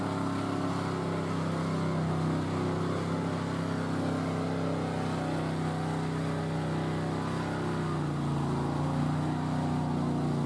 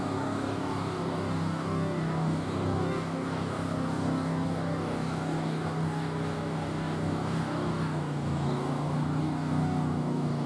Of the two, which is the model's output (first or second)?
second